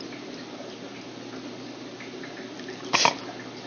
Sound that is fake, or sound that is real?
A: real